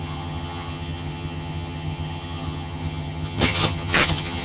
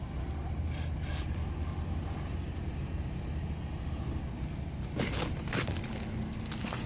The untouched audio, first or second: second